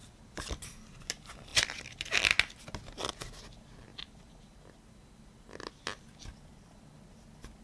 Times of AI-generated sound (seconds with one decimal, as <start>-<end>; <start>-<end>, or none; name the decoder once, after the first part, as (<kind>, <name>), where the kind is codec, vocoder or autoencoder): none